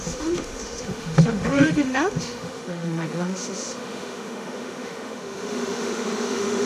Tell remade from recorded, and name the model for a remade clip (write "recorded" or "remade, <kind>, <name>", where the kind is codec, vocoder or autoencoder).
remade, autoencoder, DAC-VAE